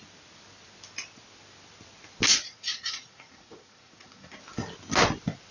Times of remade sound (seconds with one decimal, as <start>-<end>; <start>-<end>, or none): 2.3-4.4